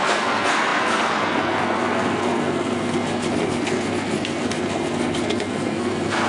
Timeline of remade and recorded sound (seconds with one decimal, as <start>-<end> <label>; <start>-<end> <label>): 0.0-6.3 remade